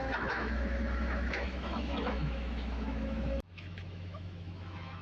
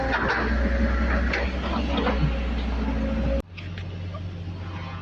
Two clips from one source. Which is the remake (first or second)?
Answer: first